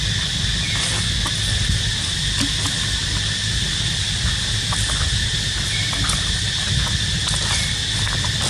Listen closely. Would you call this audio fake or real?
real